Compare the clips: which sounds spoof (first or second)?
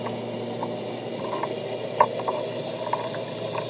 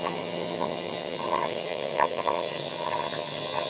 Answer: second